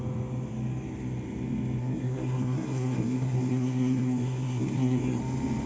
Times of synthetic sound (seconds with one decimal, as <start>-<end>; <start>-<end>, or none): 1.8-5.2

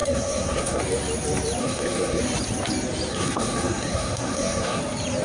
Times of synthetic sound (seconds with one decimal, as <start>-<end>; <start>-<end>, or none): 0.0-0.8; 1.6-2.2; 3.1-4.8

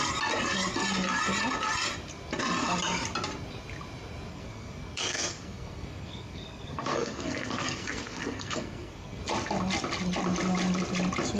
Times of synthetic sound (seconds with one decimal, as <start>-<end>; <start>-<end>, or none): 4.3-9.2

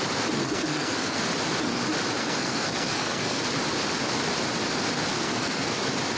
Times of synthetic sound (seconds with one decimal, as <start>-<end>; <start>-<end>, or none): 0.4-1.2; 2.2-3.4; 5.1-5.8

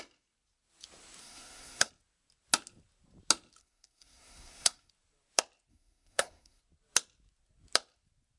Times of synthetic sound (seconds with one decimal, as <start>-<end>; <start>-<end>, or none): 1.2-1.9; 3.6-4.9; 5.7-6.6

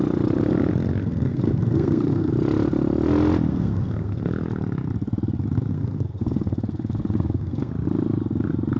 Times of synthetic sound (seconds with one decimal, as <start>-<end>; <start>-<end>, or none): 1.0-2.3; 3.5-4.3; 5.7-7.7

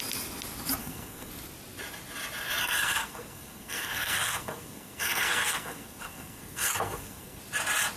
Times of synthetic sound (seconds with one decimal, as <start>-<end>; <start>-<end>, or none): 0.8-1.3; 2.6-7.4

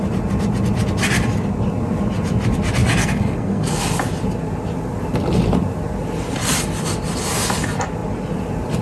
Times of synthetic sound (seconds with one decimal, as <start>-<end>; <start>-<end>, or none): 3.0-3.8